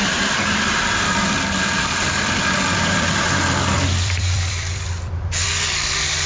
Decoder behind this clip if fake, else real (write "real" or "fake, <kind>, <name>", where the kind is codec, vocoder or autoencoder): fake, vocoder, BigVGAN v2